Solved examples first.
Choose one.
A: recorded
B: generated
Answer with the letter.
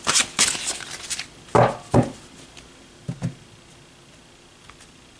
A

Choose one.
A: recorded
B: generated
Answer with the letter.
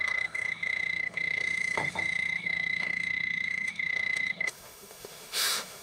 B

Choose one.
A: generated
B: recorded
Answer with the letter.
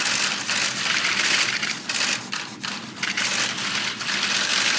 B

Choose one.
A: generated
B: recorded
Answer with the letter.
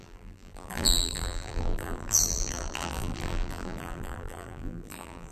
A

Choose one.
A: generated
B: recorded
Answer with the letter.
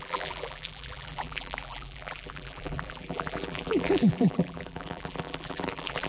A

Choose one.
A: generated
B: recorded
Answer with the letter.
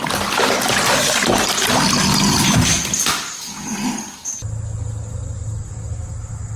B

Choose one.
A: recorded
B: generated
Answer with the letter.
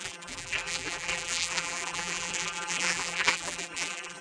B